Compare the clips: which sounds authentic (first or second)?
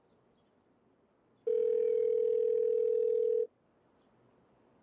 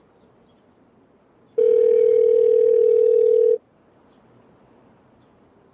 first